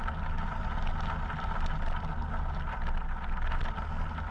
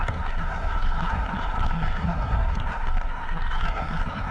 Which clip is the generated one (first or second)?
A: second